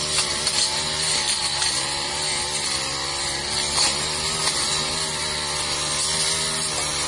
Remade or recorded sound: recorded